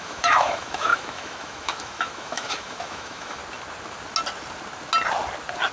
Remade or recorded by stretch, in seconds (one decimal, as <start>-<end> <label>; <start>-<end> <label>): 0.0-3.4 remade; 3.4-5.7 recorded